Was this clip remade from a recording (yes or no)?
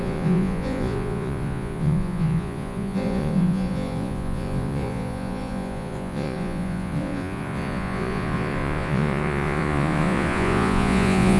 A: yes